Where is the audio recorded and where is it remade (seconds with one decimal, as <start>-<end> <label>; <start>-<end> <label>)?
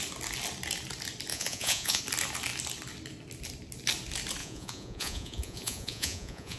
0.0-1.3 recorded; 1.3-2.0 remade; 2.0-4.4 recorded; 4.4-6.6 remade